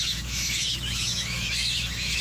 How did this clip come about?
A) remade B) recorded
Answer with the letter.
A